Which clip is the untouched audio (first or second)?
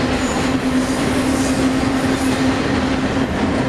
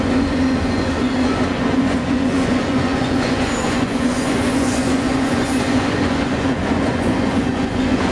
first